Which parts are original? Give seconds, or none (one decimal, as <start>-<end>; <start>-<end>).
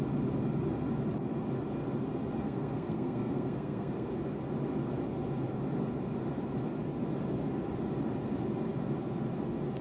0.0-2.4; 4.1-9.8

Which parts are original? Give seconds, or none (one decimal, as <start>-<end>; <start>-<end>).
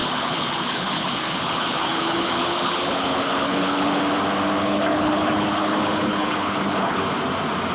4.0-4.6; 7.0-7.7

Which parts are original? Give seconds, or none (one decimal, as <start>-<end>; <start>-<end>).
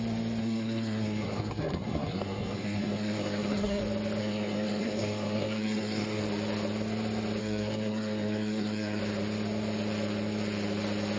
0.0-0.4; 3.8-4.2; 6.2-7.4; 9.0-11.2